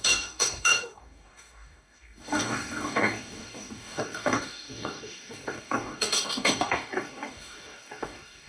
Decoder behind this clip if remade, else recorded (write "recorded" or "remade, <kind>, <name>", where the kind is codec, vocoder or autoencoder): remade, codec, DAC